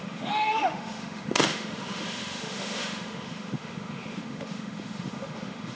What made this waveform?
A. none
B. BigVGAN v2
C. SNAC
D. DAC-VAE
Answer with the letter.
D